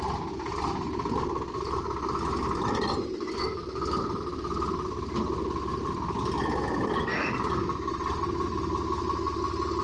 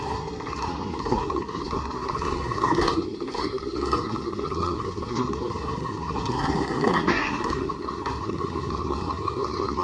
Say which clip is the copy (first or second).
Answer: second